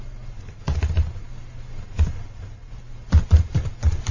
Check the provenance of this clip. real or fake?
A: real